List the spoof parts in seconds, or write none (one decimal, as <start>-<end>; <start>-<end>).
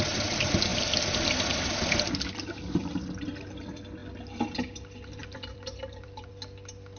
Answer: 5.2-6.3